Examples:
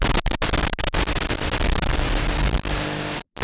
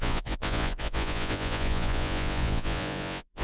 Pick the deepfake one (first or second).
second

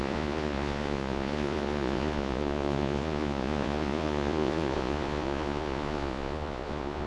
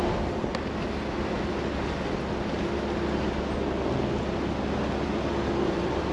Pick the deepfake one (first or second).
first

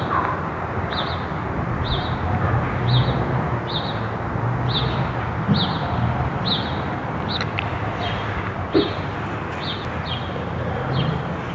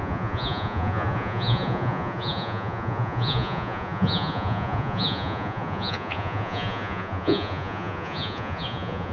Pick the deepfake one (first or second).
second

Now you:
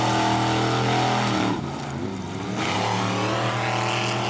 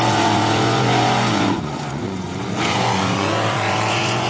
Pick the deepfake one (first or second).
second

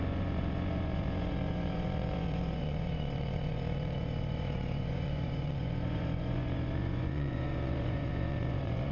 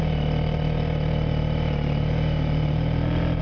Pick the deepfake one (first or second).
first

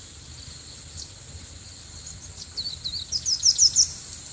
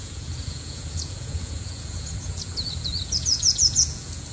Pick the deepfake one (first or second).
second